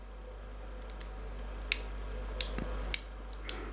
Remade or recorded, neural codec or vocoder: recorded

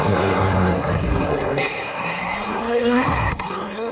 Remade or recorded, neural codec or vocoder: remade, codec, SNAC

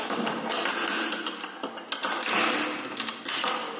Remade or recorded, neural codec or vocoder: recorded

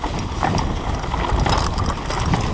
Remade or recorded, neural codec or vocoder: recorded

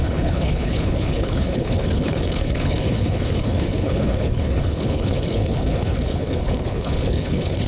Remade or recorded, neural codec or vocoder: remade, codec, HILCodec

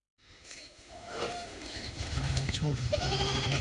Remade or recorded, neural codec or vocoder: remade, autoencoder, DAC-VAE